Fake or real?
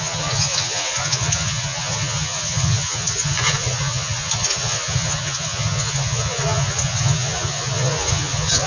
fake